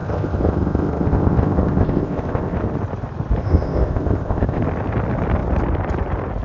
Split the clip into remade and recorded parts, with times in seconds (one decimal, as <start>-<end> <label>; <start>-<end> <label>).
0.0-2.6 remade; 2.6-3.4 recorded; 3.4-4.6 remade; 4.6-6.4 recorded

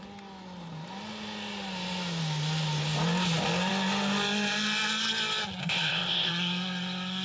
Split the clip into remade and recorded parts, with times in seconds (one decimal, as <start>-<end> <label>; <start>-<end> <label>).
0.0-5.6 recorded; 5.6-6.3 remade; 6.3-7.2 recorded

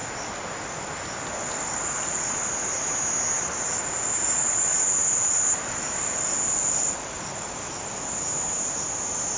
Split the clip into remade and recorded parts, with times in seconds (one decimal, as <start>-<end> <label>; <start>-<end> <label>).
0.0-9.4 recorded

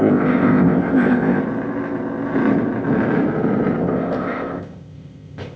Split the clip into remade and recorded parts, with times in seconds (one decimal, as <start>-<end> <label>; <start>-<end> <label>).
0.0-1.4 remade; 1.4-3.8 recorded; 3.8-5.6 remade

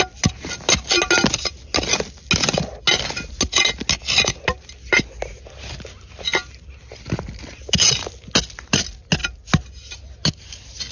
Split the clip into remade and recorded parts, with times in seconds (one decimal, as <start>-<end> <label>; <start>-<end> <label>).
0.0-10.9 recorded

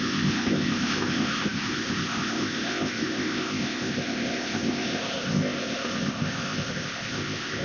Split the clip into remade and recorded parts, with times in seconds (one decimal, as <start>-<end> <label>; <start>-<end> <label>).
0.0-7.6 remade

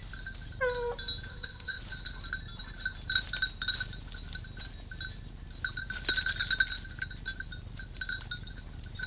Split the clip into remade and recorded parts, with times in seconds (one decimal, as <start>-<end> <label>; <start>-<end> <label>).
0.0-1.3 recorded; 1.3-1.8 remade; 1.8-9.1 recorded

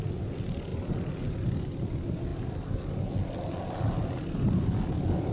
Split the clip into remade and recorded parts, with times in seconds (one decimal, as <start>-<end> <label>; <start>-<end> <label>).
0.0-5.3 recorded